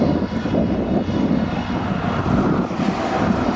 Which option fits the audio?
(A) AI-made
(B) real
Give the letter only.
B